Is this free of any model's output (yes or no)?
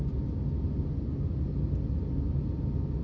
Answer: yes